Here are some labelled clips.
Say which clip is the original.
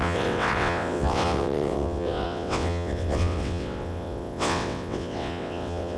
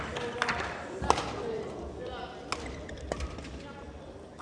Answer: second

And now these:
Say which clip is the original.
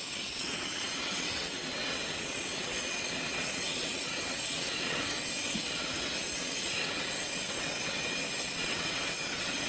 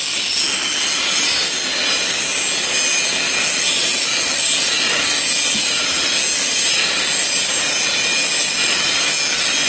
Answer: second